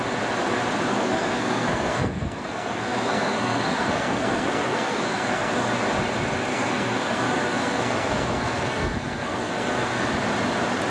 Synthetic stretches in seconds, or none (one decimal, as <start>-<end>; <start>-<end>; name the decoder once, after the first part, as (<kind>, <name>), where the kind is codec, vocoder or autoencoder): 0.9-5.5 (codec, SNAC); 6.5-10.1